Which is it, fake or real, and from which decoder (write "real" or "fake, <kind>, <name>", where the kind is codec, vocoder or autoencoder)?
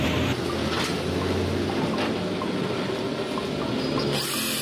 real